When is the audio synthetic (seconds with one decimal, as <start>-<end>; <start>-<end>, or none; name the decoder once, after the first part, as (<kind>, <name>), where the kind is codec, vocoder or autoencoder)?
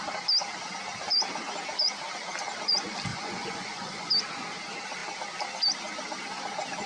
3.1-4.1 (vocoder, Vocos)